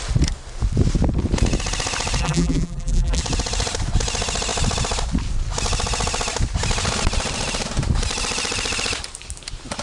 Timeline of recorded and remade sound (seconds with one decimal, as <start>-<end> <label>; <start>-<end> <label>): 0.0-2.2 recorded; 2.2-3.2 remade; 3.2-9.8 recorded